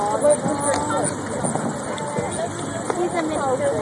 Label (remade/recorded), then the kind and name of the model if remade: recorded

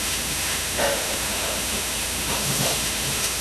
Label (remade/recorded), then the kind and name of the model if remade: remade, autoencoder, DAC-VAE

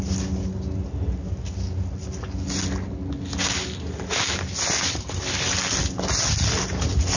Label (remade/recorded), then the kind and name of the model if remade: recorded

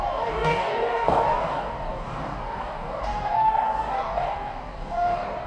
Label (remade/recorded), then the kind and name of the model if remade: remade, codec, DAC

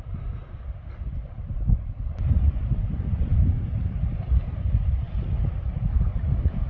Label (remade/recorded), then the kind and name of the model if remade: recorded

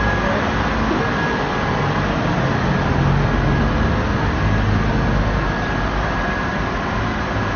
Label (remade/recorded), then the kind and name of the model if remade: recorded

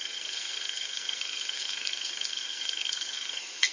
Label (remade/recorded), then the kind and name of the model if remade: remade, codec, SNAC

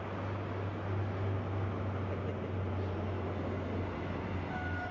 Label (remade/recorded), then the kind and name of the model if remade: recorded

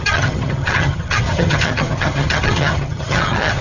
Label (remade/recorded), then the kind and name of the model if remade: remade, vocoder, HiFi-GAN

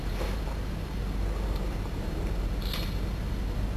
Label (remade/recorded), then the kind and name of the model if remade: remade, vocoder, BigVGAN v2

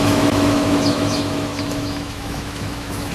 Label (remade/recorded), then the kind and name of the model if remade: remade, autoencoder, DAC-VAE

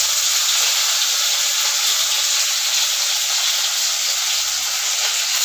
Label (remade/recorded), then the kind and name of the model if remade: recorded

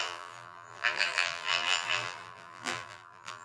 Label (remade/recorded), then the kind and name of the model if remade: remade, vocoder, BigVGAN v2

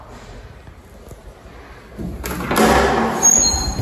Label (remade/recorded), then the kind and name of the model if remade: recorded